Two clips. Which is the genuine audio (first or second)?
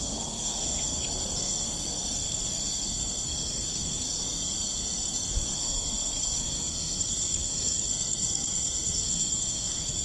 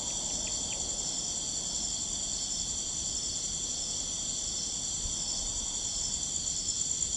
second